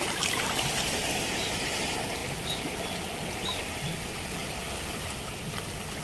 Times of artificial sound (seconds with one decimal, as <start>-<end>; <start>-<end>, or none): none